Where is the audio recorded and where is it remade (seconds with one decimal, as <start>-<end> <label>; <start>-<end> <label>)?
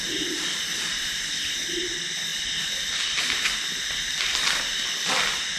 0.0-5.6 recorded